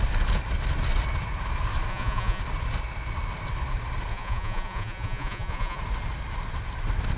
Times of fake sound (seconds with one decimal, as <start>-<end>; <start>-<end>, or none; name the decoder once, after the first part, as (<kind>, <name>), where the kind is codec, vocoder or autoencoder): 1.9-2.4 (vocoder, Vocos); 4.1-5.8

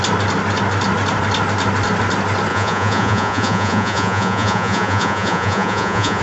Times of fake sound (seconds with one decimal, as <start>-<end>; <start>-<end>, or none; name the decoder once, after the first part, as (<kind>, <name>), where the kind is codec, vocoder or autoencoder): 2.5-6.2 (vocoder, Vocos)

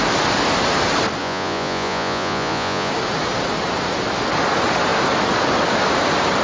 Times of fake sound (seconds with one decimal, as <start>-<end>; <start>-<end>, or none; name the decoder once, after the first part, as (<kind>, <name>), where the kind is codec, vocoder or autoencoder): 1.2-2.9 (vocoder, Vocos)

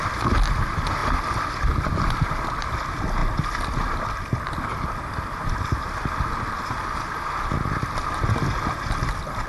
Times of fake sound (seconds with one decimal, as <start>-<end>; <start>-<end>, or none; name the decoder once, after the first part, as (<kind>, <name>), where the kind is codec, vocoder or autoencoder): none

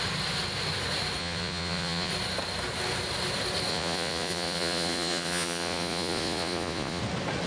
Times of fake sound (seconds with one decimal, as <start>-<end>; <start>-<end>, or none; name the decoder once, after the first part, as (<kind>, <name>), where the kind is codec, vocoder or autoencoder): 1.2-2.1 (vocoder, Vocos); 3.7-7.0

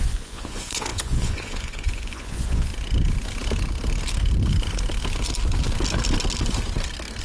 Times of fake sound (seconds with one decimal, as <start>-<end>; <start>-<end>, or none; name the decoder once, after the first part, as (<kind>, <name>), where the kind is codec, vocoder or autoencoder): 0.0-2.7 (vocoder, Vocos)

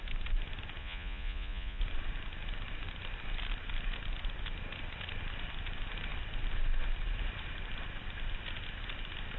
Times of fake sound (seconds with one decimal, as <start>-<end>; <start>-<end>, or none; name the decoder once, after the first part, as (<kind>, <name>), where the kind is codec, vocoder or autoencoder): 0.8-1.8 (vocoder, Vocos)

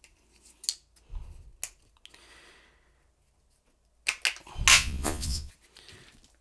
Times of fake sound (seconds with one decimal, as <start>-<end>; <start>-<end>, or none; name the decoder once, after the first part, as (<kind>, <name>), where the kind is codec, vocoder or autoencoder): 4.7-5.5 (vocoder, Vocos)